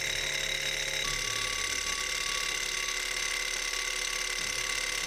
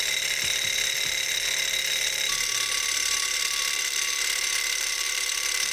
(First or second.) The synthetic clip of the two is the second